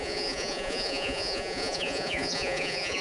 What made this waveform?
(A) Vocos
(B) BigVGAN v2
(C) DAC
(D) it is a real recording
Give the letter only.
A